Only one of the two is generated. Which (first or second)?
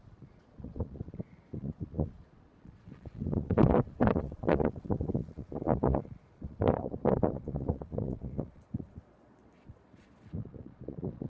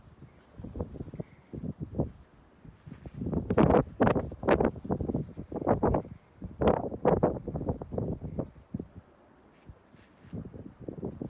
first